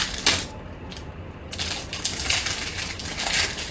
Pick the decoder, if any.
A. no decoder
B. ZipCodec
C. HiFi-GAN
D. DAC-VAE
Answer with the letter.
A